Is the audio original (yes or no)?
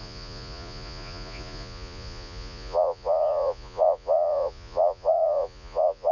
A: no